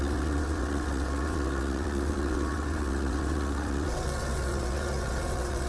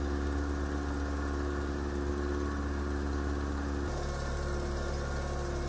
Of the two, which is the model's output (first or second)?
first